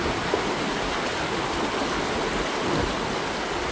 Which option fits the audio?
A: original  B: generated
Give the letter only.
A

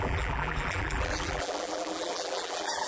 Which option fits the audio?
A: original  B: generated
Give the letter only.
B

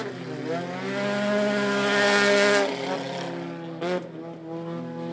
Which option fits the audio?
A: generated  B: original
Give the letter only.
B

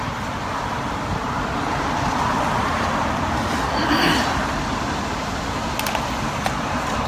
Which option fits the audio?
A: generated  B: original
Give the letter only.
B